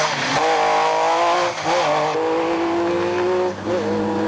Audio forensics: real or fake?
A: real